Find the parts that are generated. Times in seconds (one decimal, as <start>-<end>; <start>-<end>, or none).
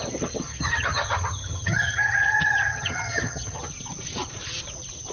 0.5-3.6